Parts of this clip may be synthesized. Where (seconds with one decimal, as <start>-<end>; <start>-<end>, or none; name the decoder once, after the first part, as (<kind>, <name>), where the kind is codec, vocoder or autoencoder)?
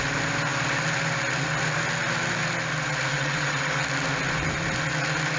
3.1-3.7 (vocoder, WaveNeXt)